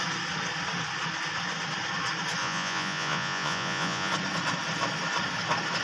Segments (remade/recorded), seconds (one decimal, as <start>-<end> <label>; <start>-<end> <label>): 0.0-2.4 recorded; 2.4-4.1 remade; 4.1-5.8 recorded